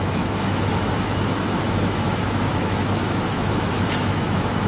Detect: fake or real fake